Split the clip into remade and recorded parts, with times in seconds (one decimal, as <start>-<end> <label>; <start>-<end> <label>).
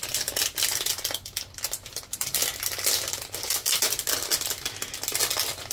0.0-5.7 recorded